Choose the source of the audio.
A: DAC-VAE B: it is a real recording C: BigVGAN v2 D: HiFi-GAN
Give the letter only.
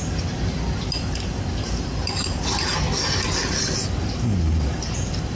B